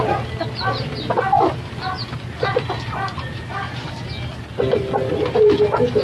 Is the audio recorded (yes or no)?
yes